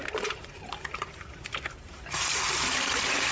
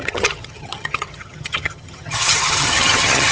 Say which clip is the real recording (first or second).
first